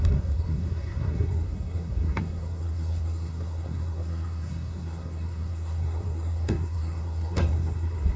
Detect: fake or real fake